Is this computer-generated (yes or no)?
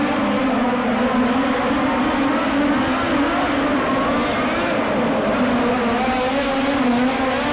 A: no